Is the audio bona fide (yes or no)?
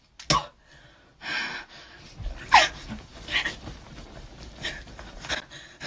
yes